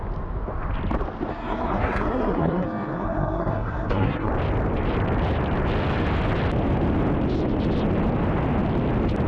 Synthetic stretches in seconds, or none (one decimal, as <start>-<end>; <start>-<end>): 1.3-4.3